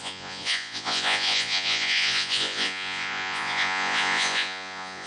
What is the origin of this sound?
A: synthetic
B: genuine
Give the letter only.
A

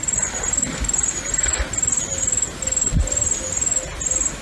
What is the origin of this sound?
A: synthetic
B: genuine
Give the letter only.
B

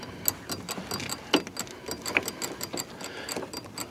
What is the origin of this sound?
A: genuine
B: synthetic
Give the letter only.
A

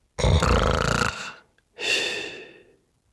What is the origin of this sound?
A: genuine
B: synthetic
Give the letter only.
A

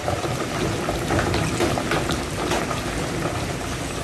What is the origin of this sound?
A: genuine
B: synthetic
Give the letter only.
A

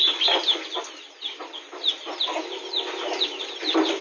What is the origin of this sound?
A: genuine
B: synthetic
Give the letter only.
A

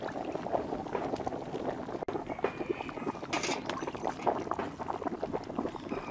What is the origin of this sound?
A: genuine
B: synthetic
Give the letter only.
A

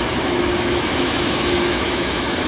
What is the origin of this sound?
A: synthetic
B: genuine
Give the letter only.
A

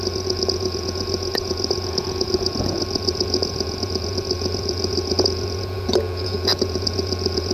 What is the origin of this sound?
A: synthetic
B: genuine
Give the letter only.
A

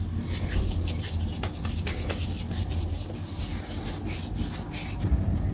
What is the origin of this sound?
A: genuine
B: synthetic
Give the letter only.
A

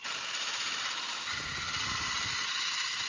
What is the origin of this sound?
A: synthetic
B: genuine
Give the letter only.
B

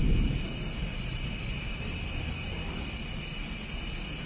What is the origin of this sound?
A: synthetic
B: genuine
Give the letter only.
B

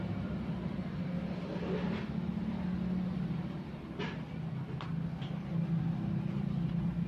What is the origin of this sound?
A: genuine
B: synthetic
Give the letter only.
A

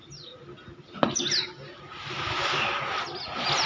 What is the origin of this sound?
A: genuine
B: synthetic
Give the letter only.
A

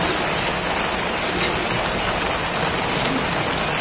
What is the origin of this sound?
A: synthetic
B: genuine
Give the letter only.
B